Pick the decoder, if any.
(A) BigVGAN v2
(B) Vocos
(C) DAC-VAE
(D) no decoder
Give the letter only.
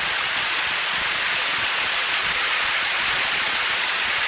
B